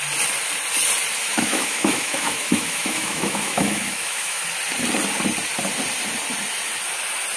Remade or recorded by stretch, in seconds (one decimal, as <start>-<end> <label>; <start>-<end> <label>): 0.0-1.3 recorded; 1.3-4.4 remade; 4.4-7.4 recorded